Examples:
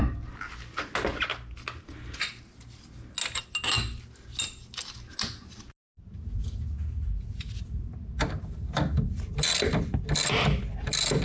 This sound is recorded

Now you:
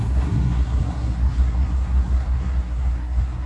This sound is remade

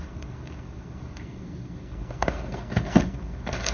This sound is remade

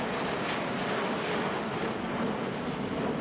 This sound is recorded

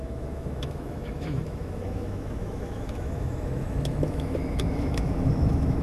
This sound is remade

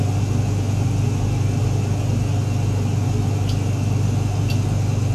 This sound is recorded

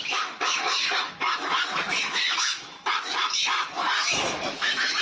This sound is remade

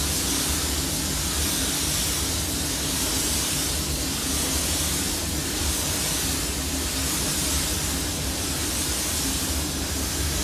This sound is recorded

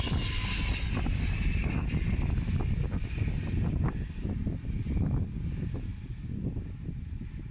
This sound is recorded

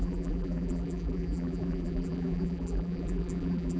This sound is remade